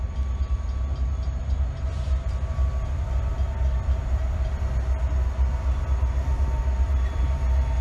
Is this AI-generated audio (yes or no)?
no